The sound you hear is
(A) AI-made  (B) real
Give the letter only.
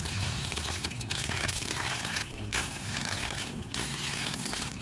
A